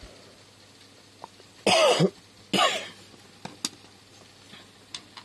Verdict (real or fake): real